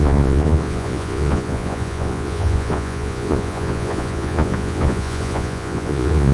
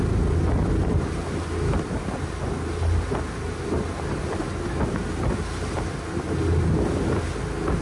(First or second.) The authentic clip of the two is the second